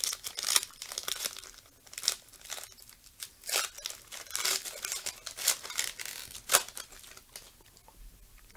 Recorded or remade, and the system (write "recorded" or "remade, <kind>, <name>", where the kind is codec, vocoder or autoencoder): recorded